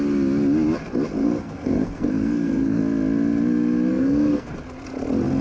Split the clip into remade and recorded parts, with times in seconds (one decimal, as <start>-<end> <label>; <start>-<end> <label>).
0.0-1.2 recorded; 1.2-2.8 remade; 2.8-3.9 recorded; 3.9-4.5 remade; 4.5-5.4 recorded